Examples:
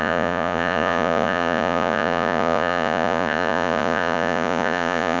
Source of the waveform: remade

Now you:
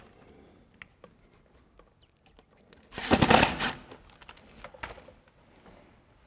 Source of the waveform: recorded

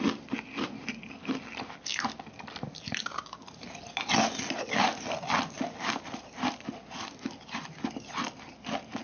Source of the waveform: recorded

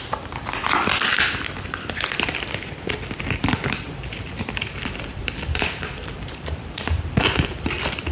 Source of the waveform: remade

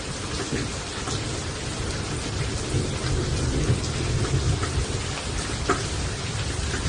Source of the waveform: recorded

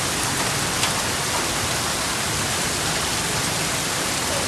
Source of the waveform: recorded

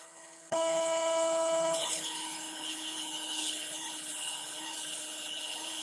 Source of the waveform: remade